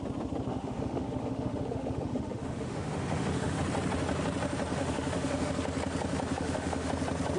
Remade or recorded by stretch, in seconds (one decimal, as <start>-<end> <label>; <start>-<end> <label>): 0.0-0.5 recorded; 0.5-3.6 remade; 3.6-4.7 recorded; 4.7-5.5 remade; 5.5-6.3 recorded; 6.3-6.9 remade; 6.9-7.4 recorded

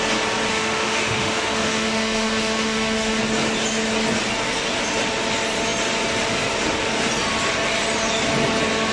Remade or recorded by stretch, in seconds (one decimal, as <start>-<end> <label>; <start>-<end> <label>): 0.0-0.5 recorded; 0.5-3.2 remade; 3.2-8.9 recorded

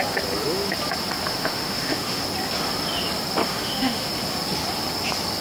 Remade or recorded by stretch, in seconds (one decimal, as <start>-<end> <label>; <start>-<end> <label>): 0.0-1.3 recorded; 1.3-2.2 remade; 2.2-3.5 recorded; 3.5-4.1 remade; 4.1-5.4 recorded

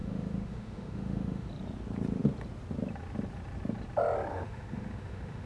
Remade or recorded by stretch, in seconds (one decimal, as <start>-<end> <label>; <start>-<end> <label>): 0.0-1.5 remade; 1.5-4.3 recorded; 4.3-5.5 remade